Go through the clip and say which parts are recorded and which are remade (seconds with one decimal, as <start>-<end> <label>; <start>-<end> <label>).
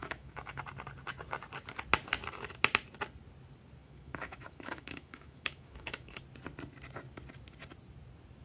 0.0-0.6 remade; 0.6-3.8 recorded; 3.8-6.2 remade; 6.2-8.4 recorded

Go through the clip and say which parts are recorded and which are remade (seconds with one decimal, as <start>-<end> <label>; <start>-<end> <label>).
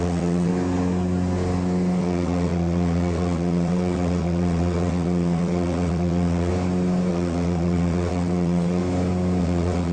0.0-0.5 remade; 0.5-2.0 recorded; 2.0-6.5 remade; 6.5-7.1 recorded; 7.1-8.8 remade; 8.8-9.4 recorded; 9.4-9.9 remade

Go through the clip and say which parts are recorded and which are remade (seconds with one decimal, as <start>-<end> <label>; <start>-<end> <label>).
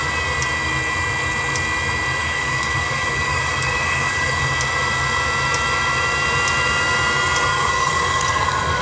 0.0-2.2 recorded; 2.2-4.4 remade; 4.4-7.5 recorded; 7.5-8.8 remade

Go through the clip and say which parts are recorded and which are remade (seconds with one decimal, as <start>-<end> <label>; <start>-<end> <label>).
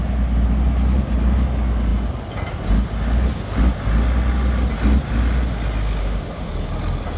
0.0-6.0 recorded; 6.0-6.5 remade; 6.5-7.2 recorded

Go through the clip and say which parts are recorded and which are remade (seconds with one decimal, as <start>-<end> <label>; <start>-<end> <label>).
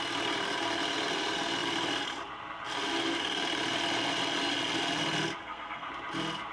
0.0-5.4 recorded; 5.4-5.9 remade; 5.9-6.5 recorded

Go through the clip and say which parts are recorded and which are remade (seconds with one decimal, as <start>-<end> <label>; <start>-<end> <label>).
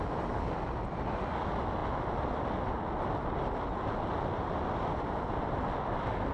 0.0-6.3 recorded